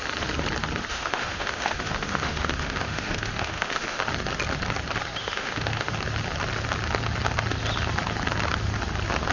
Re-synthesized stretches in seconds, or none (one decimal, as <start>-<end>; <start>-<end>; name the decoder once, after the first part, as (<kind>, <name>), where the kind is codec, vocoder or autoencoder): 0.9-4.0 (autoencoder, DAC-VAE); 5.2-5.9